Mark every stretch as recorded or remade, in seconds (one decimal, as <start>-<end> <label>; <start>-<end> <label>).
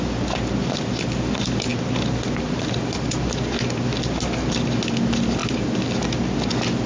0.0-6.9 recorded